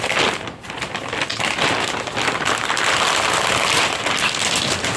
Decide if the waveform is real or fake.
real